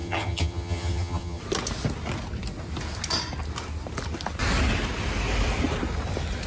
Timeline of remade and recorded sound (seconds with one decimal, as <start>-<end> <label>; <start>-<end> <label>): 0.0-1.4 remade; 1.4-6.5 recorded

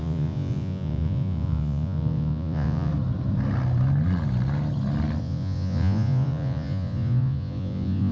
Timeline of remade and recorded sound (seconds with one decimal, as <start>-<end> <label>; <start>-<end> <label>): 0.0-2.9 remade; 2.9-5.2 recorded; 5.2-8.1 remade

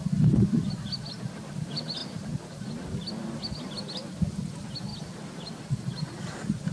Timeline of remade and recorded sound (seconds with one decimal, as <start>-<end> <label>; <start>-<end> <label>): 0.0-4.9 recorded; 4.9-5.7 remade; 5.7-6.7 recorded

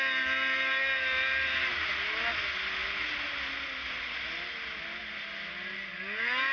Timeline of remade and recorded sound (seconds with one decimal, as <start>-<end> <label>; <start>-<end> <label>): 0.0-6.5 recorded

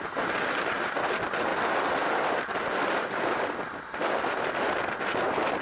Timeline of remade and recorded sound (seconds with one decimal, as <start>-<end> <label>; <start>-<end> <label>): 0.0-5.6 recorded

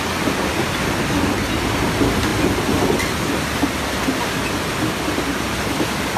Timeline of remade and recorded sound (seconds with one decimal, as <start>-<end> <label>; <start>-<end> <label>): 0.0-6.2 recorded

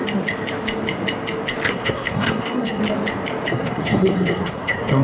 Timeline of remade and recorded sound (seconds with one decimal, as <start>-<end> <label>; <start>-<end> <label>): 0.0-1.7 recorded; 1.7-2.8 remade; 2.8-3.5 recorded; 3.5-5.0 remade

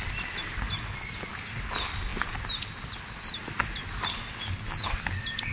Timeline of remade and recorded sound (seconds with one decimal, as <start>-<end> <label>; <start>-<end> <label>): 0.0-5.5 recorded